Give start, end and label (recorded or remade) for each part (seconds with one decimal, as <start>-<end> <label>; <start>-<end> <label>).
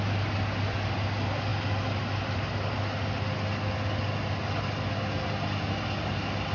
0.0-6.5 recorded